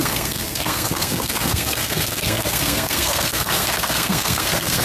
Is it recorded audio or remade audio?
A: remade